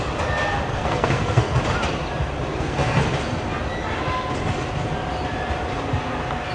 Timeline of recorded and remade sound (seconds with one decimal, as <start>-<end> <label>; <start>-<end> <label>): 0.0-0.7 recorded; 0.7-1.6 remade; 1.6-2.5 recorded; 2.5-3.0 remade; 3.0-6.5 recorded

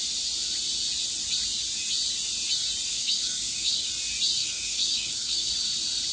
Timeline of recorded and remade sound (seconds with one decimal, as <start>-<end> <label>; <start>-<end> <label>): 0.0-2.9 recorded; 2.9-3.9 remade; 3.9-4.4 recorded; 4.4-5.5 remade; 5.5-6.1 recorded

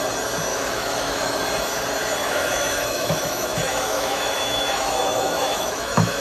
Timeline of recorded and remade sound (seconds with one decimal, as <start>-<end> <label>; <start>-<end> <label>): 0.0-0.5 recorded; 0.5-1.4 remade; 1.4-2.2 recorded; 2.2-6.2 remade

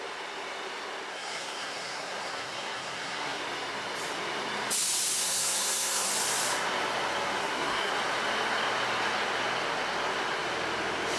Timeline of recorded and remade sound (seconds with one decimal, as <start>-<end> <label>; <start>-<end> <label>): 0.0-1.1 recorded; 1.1-3.4 remade; 3.4-5.2 recorded; 5.2-6.1 remade; 6.1-7.4 recorded; 7.4-7.9 remade; 7.9-11.2 recorded

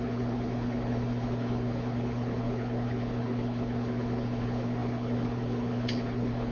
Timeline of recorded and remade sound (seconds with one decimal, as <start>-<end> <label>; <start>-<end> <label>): 0.0-6.5 remade

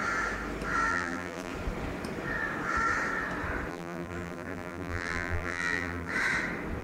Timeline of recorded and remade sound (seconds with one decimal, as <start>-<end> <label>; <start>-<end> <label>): 0.0-0.9 recorded; 0.9-1.5 remade; 1.5-3.7 recorded; 3.7-6.1 remade; 6.1-6.8 recorded

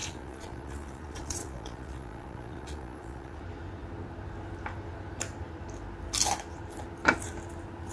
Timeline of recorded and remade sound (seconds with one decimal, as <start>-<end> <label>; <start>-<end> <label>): 0.0-3.4 remade; 3.4-7.9 recorded

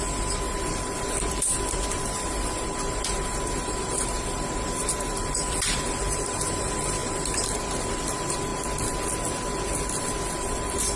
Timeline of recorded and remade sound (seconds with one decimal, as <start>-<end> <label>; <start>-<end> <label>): 0.0-7.0 remade; 7.0-7.8 recorded; 7.8-8.5 remade; 8.5-10.0 recorded; 10.0-11.0 remade